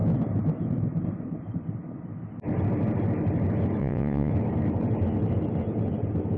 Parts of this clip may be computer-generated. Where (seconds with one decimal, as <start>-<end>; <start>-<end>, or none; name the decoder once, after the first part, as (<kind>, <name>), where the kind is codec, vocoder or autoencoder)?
3.8-4.3 (vocoder, WaveNeXt)